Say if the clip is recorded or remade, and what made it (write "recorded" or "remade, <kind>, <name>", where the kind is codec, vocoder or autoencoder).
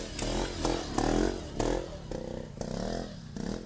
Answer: recorded